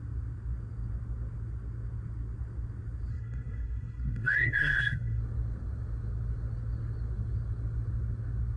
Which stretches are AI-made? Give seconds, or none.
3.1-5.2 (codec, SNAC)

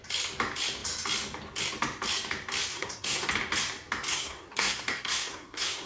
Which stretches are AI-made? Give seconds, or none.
2.7-3.3 (codec, SNAC); 4.1-5.9

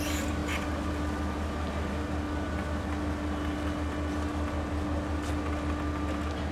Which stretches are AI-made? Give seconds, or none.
none